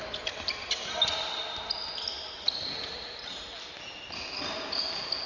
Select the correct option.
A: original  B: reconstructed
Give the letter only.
A